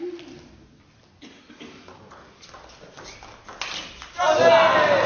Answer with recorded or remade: recorded